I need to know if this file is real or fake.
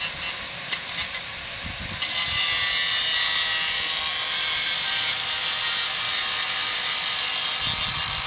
real